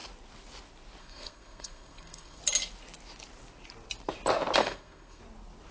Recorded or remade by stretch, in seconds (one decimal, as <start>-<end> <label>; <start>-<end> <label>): 0.0-1.0 recorded; 1.0-2.4 remade; 2.4-4.6 recorded; 4.6-5.2 remade; 5.2-5.7 recorded